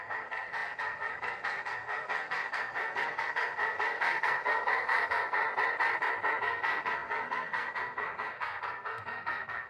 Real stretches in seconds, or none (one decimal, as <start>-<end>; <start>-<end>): 5.4-6.4